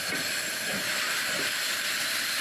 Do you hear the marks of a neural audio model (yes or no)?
no